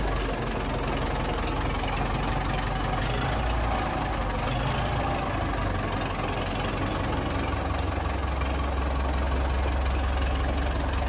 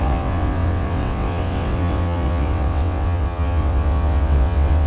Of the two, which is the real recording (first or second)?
first